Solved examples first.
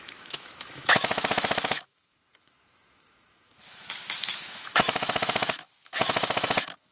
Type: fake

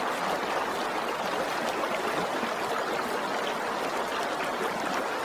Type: real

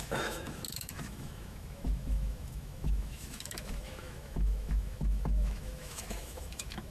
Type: fake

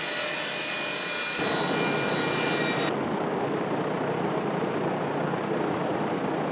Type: real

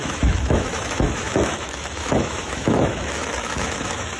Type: fake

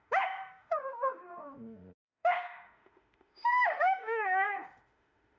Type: fake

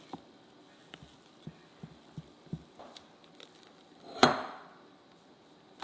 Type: real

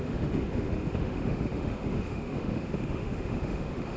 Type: fake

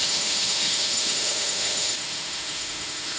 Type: fake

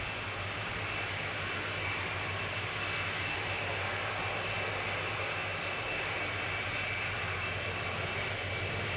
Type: real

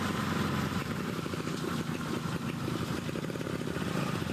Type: real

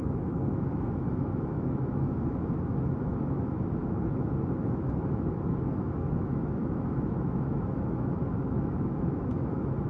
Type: fake